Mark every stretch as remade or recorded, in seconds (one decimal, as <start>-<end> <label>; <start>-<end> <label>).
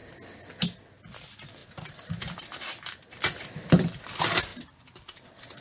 0.0-1.6 recorded; 1.6-4.0 remade; 4.0-4.5 recorded; 4.5-5.6 remade